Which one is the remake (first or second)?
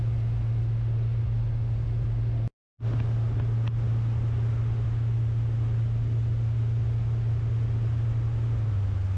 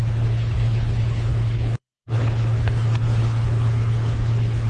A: second